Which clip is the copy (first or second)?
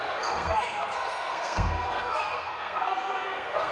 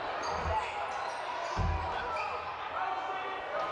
first